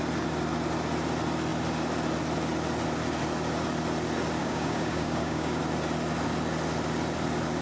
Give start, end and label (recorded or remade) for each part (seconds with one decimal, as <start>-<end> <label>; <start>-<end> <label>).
0.0-4.4 recorded; 4.4-5.6 remade; 5.6-7.6 recorded